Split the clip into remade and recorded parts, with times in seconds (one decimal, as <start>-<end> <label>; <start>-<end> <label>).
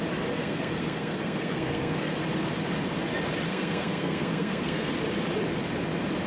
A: 0.0-0.4 recorded; 0.4-2.1 remade; 2.1-3.5 recorded; 3.5-4.9 remade; 4.9-6.3 recorded